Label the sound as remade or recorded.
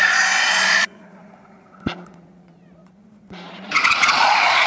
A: remade